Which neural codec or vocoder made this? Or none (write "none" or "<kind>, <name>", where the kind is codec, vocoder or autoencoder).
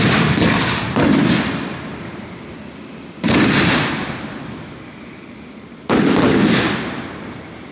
none